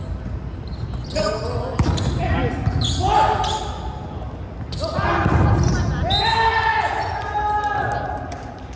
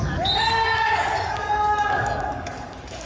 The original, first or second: first